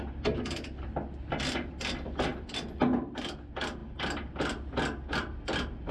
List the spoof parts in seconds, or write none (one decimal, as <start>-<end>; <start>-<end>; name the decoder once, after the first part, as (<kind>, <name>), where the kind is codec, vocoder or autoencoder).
none